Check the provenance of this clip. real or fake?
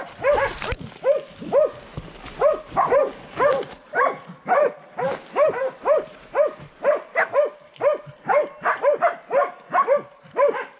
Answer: real